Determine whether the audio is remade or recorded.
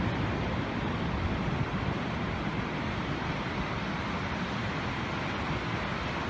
recorded